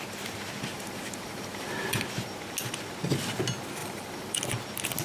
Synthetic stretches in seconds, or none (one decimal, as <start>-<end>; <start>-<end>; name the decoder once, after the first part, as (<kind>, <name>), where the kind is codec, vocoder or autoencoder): 0.7-2.0 (vocoder, BigVGAN v2); 3.8-4.4